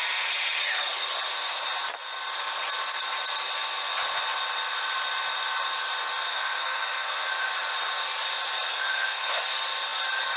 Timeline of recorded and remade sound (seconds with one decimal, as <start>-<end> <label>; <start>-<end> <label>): 0.0-6.3 recorded; 6.3-7.3 remade; 7.3-8.7 recorded; 8.7-9.4 remade; 9.4-10.4 recorded